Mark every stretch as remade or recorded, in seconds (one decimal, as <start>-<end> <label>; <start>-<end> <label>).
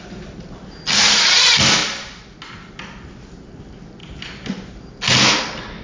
0.0-5.8 recorded